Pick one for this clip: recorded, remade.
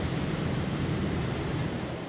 remade